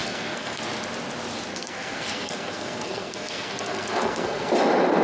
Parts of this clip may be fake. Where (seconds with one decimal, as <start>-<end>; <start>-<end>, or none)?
0.0-0.6; 1.5-4.5